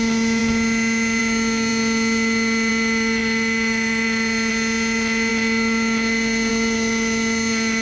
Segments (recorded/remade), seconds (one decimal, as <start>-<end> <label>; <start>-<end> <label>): 0.0-7.8 recorded